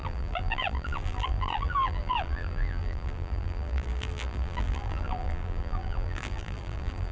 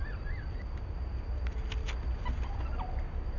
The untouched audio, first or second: second